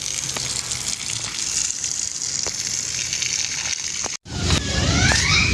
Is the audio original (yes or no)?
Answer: yes